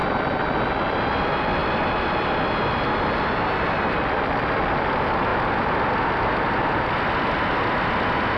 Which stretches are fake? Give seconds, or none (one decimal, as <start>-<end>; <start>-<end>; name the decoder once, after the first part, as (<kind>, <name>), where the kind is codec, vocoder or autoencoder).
none